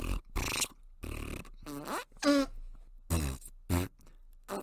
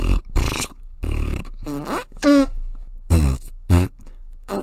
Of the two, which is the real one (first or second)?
first